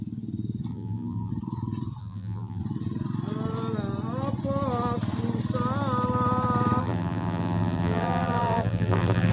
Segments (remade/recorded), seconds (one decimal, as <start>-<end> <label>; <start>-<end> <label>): 0.0-0.7 recorded; 0.7-1.3 remade; 1.3-2.0 recorded; 2.0-2.6 remade; 2.6-6.8 recorded; 6.8-9.3 remade